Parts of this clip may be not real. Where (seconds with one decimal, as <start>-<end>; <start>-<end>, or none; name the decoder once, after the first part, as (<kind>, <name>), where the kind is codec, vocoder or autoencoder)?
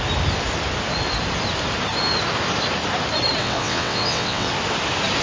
3.4-4.5 (vocoder, WaveNeXt)